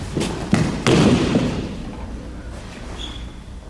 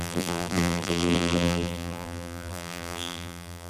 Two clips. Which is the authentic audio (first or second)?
first